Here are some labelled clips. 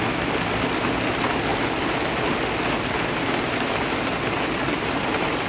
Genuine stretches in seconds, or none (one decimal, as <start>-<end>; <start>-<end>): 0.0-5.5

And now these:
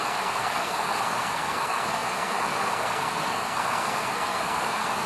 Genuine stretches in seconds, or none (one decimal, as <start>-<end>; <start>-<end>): none

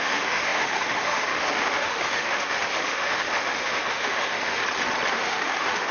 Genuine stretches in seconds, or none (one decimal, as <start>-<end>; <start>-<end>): 4.6-5.1

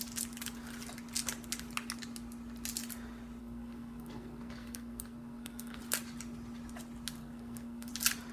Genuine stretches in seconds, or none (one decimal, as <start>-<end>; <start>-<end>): 0.0-3.4; 5.8-7.2; 7.9-8.3

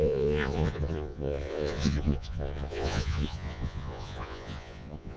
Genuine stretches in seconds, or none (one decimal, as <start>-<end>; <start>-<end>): none